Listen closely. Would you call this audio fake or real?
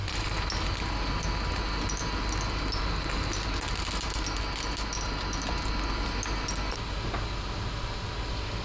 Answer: real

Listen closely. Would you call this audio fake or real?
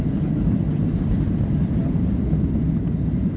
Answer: fake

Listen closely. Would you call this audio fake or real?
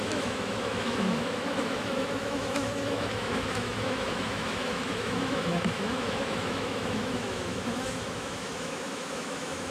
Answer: fake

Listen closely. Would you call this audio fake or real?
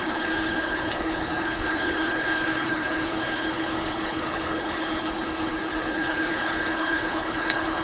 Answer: fake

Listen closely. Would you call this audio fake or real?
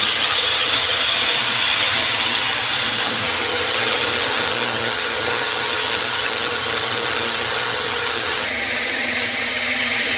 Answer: fake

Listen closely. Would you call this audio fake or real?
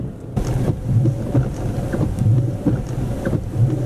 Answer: real